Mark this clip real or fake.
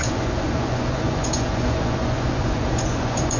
fake